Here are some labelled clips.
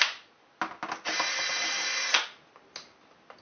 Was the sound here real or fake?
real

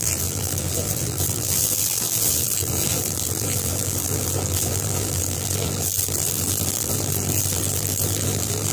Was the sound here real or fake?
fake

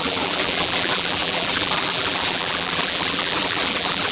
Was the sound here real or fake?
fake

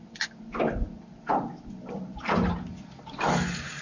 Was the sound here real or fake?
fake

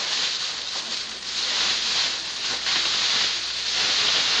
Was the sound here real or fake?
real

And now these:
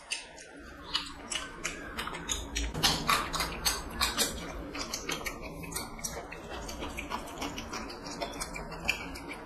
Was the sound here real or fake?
fake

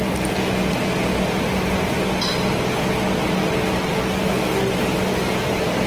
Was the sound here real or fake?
real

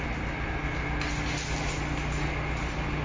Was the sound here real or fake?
real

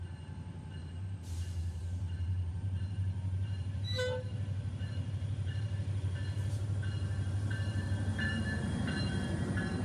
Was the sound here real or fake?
fake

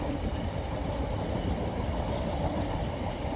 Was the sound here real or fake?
real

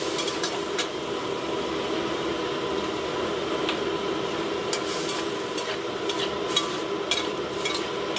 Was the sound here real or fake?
real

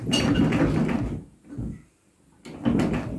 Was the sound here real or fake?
real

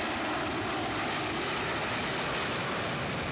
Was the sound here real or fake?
real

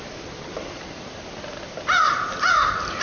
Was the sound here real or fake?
fake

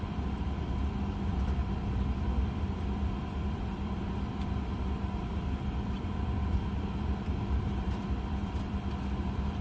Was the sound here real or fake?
fake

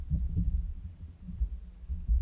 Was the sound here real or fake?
real